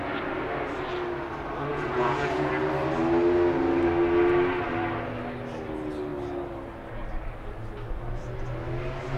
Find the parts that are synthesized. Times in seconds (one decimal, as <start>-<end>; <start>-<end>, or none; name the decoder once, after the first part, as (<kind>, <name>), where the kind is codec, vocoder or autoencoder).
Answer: 1.7-2.5 (vocoder, Vocos)